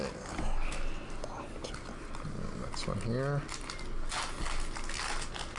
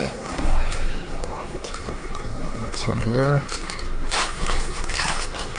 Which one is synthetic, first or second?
second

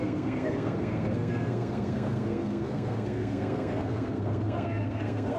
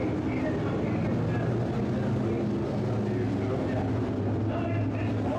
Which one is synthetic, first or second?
first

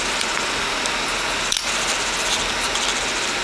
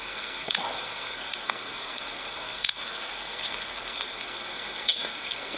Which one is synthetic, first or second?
second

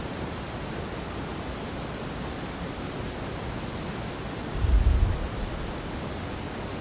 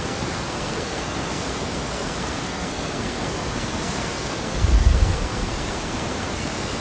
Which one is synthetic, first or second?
second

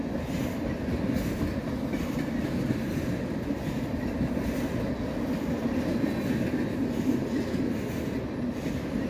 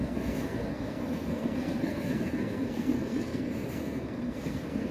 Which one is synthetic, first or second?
second